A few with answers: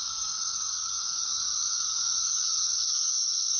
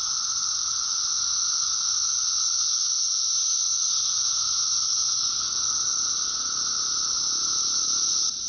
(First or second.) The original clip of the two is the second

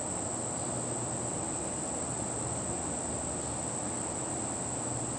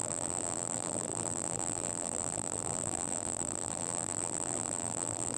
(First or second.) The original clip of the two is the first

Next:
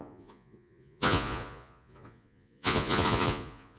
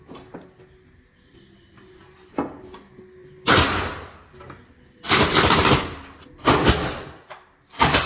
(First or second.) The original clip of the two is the second